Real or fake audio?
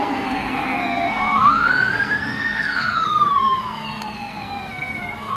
fake